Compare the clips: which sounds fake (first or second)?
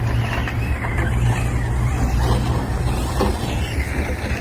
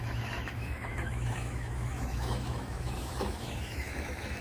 second